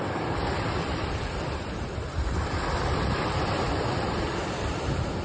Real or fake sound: fake